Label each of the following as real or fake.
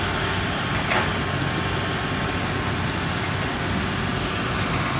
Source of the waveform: real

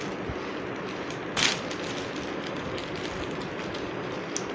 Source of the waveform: real